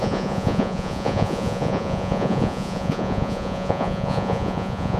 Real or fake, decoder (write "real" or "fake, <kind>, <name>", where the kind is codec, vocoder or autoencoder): fake, vocoder, Vocos